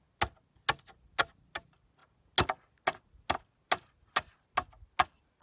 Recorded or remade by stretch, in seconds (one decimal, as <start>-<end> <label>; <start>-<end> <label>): 0.0-5.4 recorded

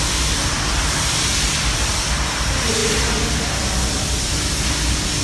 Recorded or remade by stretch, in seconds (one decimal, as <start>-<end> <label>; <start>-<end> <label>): 0.0-5.2 recorded

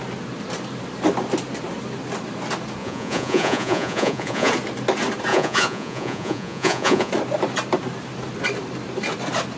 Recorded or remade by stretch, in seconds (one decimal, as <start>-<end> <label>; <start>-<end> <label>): 0.0-2.8 recorded; 2.8-4.5 remade; 4.5-5.3 recorded; 5.3-7.1 remade; 7.1-9.6 recorded

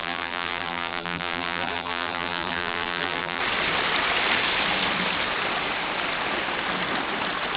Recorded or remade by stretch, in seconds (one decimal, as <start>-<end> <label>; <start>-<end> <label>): 0.0-3.4 remade; 3.4-7.6 recorded

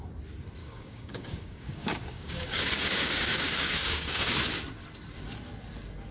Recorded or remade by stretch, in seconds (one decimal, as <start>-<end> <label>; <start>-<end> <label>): 0.0-0.6 recorded; 0.6-4.3 remade; 4.3-6.1 recorded

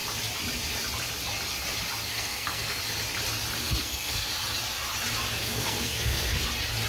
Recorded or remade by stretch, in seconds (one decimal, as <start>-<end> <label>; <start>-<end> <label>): 0.0-2.1 recorded; 2.1-2.8 remade; 2.8-3.6 recorded; 3.6-4.3 remade; 4.3-5.4 recorded; 5.4-6.4 remade; 6.4-6.9 recorded

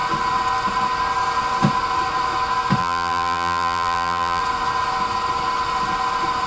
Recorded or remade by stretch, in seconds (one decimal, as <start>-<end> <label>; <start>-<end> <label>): 0.0-2.8 recorded; 2.8-4.4 remade; 4.4-6.5 recorded